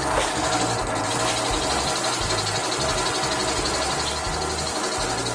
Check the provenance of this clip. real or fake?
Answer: real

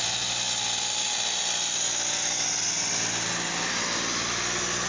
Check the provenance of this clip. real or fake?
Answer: real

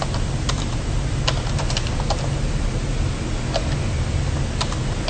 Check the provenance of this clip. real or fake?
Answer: real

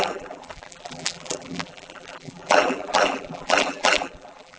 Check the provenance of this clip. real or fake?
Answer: fake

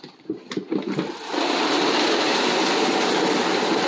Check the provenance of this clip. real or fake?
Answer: real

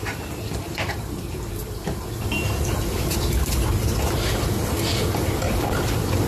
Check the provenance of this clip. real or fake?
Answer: fake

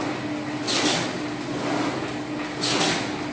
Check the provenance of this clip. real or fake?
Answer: real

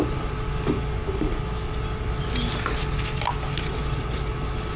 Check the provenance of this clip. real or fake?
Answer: real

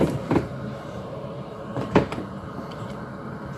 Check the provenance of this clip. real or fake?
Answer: fake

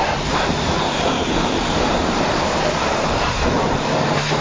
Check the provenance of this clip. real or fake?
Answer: fake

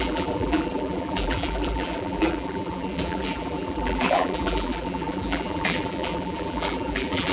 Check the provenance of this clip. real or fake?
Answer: fake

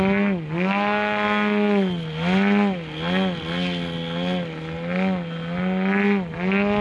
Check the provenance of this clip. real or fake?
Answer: real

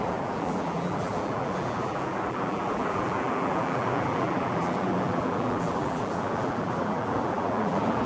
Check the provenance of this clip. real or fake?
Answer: fake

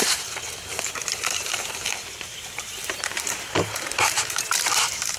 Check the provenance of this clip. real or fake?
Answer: fake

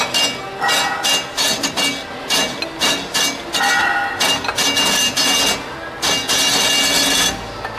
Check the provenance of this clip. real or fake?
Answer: real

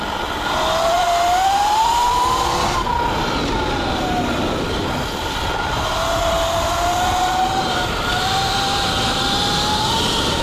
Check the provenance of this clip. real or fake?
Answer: real